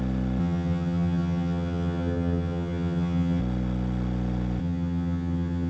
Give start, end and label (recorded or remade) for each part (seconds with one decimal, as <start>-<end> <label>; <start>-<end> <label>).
0.0-0.4 recorded; 0.4-3.4 remade; 3.4-4.6 recorded; 4.6-5.7 remade